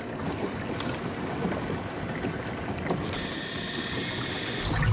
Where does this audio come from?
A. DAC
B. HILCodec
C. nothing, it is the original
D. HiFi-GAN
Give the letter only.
C